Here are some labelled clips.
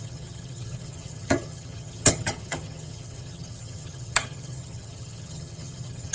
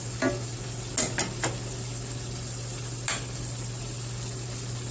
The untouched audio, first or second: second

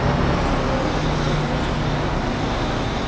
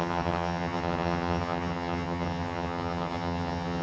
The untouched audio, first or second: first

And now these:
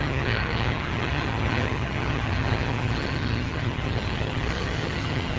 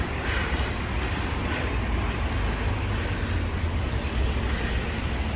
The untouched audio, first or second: second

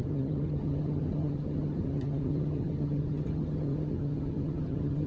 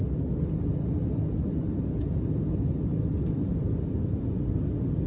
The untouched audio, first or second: second